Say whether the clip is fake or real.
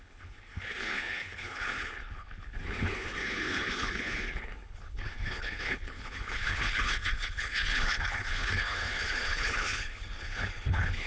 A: fake